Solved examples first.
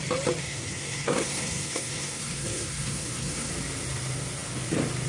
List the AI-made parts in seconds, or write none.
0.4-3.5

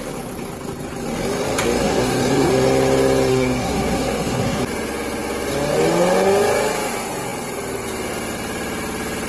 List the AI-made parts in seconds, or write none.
1.8-2.5; 3.3-4.6

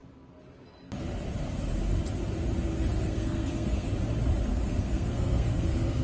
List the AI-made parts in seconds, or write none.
2.9-3.9; 4.5-6.0

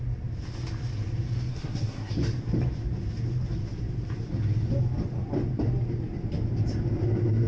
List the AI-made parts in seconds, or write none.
1.5-2.1

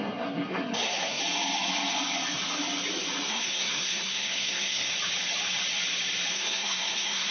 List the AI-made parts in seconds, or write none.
0.0-1.2; 3.3-4.9; 6.3-7.3